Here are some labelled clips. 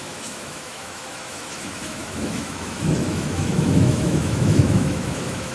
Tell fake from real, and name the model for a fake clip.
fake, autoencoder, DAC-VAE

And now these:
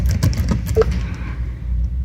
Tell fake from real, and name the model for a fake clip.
real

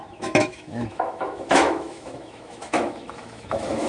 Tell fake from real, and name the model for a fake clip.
fake, autoencoder, DAC-VAE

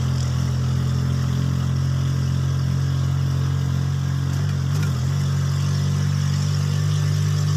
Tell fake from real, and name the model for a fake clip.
real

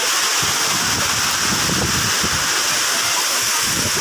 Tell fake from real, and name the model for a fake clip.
real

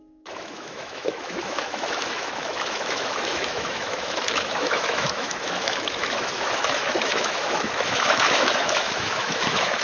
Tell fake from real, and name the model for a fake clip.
fake, autoencoder, DAC-VAE